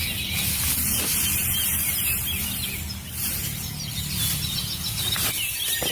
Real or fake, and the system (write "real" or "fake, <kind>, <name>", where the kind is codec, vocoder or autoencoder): real